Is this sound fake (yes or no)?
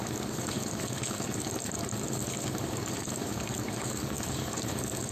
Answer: yes